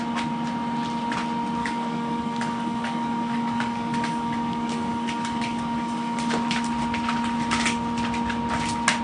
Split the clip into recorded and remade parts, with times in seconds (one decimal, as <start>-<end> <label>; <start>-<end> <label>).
0.0-1.6 recorded; 1.6-6.3 remade; 6.3-9.0 recorded